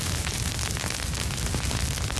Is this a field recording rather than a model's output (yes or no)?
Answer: yes